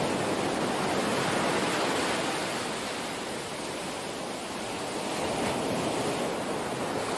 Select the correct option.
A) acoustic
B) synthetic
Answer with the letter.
A